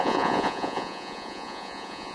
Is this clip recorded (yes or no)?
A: no